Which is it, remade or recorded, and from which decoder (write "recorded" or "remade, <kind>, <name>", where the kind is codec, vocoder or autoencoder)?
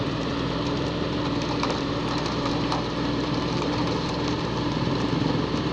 remade, vocoder, BigVGAN v2